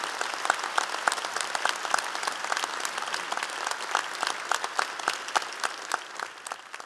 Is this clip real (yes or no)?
yes